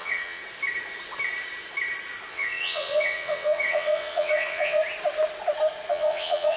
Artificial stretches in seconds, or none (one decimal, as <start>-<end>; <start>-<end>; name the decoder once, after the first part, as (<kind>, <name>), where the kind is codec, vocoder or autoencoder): 0.0-0.4 (vocoder, WaveNeXt); 2.3-4.8; 5.9-6.6